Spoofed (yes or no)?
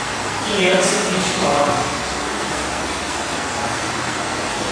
yes